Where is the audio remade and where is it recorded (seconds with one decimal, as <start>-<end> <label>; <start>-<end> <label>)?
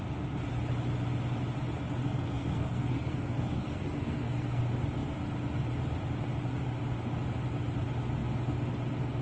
0.0-2.0 recorded; 2.0-4.6 remade; 4.6-9.2 recorded